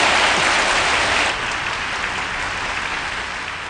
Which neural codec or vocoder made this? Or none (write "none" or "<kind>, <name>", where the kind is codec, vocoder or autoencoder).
none